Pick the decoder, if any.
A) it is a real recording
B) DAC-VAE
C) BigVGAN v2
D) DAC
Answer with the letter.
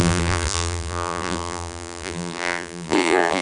C